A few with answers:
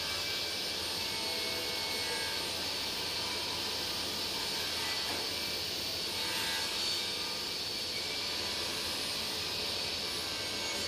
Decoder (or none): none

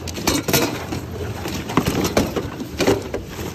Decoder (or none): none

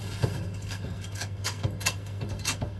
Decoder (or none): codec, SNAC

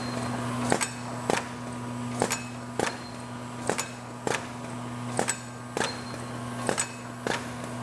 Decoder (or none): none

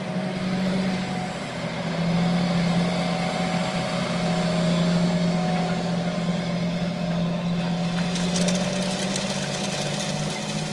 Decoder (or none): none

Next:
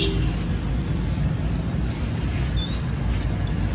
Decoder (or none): none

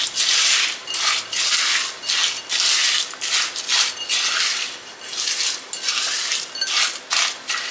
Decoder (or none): none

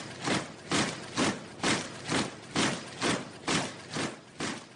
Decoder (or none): none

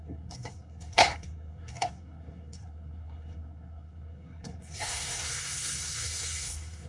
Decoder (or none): codec, SNAC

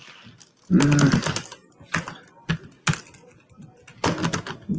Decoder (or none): none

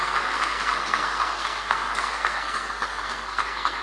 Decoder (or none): codec, SNAC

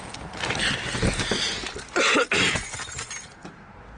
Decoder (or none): none